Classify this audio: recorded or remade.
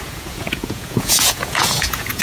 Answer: remade